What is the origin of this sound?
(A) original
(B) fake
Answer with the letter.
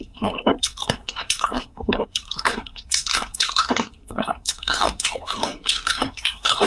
B